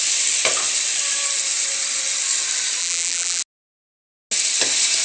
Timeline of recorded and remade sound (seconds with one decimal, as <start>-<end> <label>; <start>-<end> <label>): 0.0-2.8 recorded; 2.8-3.4 remade; 3.4-5.0 recorded